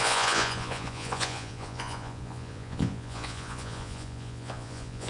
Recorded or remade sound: remade